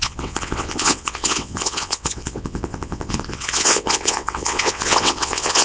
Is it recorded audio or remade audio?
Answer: remade